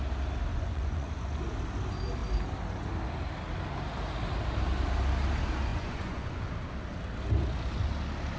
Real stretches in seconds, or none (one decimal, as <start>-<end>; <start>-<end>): 0.0-0.5; 1.4-5.7; 6.4-8.4